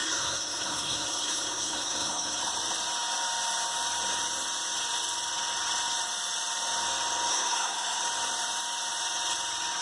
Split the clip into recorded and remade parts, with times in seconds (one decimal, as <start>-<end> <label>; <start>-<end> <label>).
0.0-2.4 remade; 2.4-7.3 recorded; 7.3-8.0 remade; 8.0-9.8 recorded